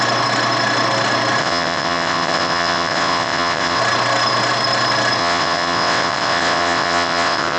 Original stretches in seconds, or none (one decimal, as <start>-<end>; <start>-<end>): 0.0-1.4; 3.8-5.2